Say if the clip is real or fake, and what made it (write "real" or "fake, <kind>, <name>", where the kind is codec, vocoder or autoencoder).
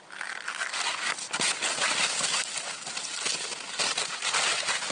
real